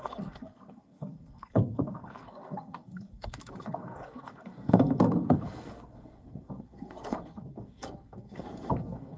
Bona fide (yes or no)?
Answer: no